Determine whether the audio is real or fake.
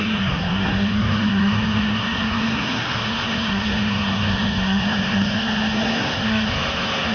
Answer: fake